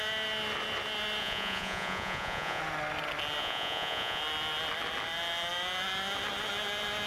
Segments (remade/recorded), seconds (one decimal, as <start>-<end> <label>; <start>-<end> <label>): 0.0-1.2 recorded; 1.2-2.6 remade; 2.6-3.4 recorded; 3.4-4.2 remade; 4.2-7.1 recorded